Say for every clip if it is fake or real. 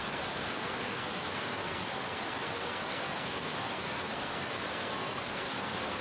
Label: fake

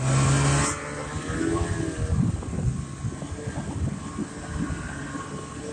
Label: real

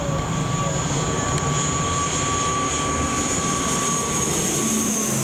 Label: real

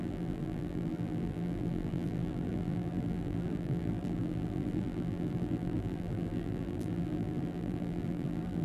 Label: fake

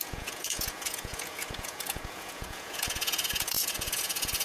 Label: fake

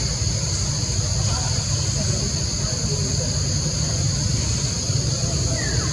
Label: real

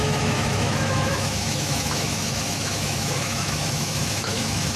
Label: fake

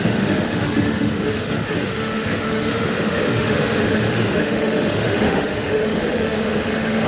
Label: fake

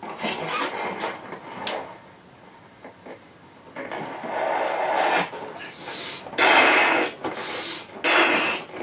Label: real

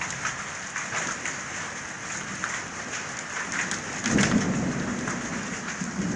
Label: real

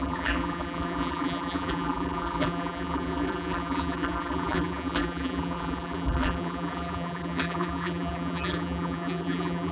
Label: fake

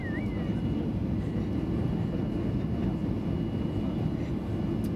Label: real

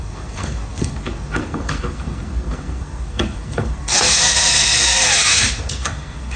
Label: fake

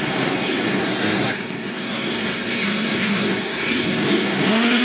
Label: fake